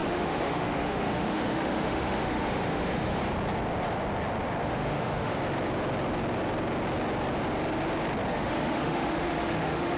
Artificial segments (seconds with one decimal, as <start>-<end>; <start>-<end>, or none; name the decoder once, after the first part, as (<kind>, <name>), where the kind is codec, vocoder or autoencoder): 0.0-3.2 (autoencoder, DAC-VAE); 4.6-5.4; 8.3-10.0